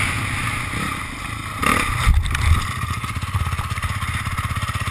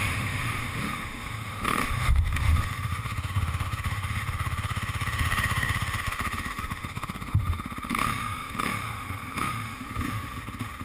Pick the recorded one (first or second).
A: first